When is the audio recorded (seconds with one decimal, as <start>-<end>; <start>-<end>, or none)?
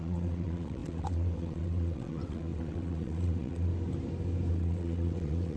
3.7-4.5